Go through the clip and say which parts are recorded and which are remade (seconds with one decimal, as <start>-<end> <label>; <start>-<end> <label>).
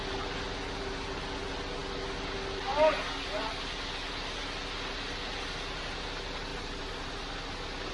0.0-6.5 recorded; 6.5-7.1 remade; 7.1-7.9 recorded